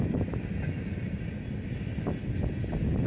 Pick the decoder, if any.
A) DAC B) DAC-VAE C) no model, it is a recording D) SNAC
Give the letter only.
C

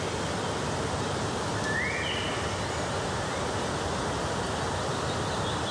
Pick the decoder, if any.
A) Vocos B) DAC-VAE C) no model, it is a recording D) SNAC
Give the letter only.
C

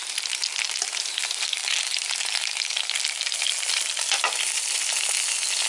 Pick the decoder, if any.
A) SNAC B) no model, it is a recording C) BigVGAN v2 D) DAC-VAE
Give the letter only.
B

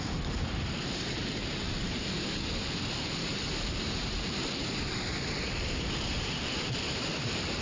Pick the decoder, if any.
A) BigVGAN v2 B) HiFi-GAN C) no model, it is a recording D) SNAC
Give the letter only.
A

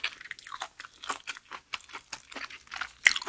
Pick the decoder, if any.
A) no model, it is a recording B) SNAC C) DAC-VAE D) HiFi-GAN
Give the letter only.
A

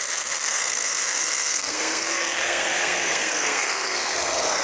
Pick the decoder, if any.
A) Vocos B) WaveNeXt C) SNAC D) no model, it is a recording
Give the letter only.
C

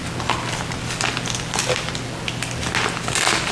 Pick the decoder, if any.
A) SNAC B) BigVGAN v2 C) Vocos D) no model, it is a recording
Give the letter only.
D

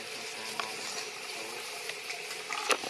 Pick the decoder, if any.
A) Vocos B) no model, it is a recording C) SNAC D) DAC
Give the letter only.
B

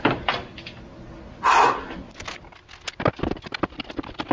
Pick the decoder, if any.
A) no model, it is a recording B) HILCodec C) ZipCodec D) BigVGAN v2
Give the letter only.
A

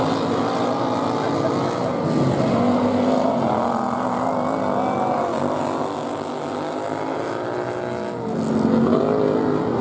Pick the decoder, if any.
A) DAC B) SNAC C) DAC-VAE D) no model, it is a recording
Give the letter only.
D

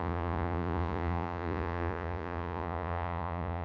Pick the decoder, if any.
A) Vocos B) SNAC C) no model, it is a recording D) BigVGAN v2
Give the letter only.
A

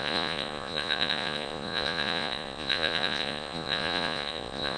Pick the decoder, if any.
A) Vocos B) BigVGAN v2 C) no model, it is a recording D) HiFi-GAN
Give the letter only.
A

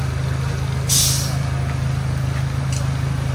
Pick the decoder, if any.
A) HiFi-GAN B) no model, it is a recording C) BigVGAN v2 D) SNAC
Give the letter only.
B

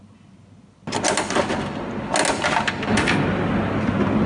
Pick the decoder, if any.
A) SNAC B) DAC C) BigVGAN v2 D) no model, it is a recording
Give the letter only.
D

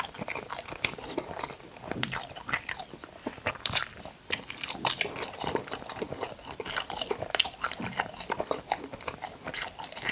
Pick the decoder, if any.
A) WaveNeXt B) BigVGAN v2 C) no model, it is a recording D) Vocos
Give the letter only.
B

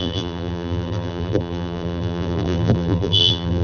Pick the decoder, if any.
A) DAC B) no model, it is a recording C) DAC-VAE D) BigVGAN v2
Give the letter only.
D